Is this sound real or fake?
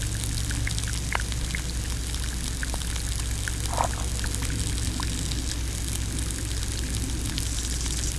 real